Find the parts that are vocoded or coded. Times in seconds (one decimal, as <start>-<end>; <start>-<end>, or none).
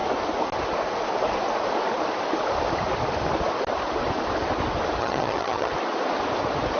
5.0-5.7